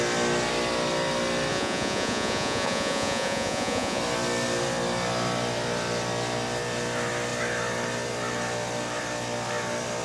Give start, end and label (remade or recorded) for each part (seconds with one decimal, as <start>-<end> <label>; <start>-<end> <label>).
0.0-1.5 recorded; 1.5-4.0 remade; 4.0-10.0 recorded

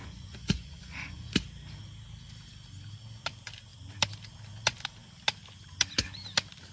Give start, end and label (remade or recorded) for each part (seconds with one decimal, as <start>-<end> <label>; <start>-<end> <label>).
0.0-1.3 remade; 1.3-6.7 recorded

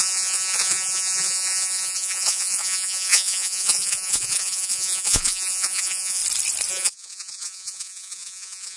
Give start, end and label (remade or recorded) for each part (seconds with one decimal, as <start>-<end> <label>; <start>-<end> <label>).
0.0-6.2 remade; 6.2-6.7 recorded; 6.7-8.8 remade

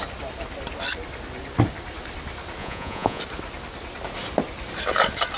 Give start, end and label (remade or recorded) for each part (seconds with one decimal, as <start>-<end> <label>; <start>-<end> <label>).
0.0-2.6 recorded; 2.6-3.2 remade; 3.2-5.4 recorded

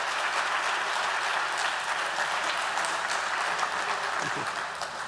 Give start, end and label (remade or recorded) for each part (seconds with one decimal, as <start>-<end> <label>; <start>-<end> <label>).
0.0-5.1 recorded

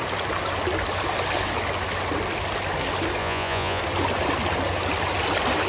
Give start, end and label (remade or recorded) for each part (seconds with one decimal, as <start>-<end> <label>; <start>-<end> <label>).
0.0-3.2 recorded; 3.2-3.8 remade; 3.8-5.7 recorded